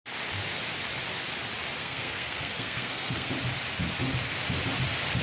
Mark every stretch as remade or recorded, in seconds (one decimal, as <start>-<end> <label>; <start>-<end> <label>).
0.0-1.8 recorded; 1.8-3.3 remade; 3.3-5.2 recorded